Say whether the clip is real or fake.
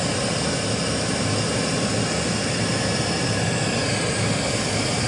real